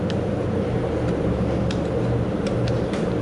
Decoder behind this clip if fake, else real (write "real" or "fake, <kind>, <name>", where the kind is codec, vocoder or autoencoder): real